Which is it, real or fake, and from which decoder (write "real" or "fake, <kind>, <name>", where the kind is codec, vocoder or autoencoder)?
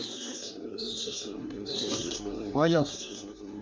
fake, codec, SNAC